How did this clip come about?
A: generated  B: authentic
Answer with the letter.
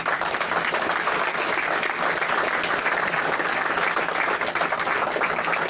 B